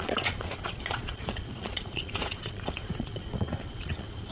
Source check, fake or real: fake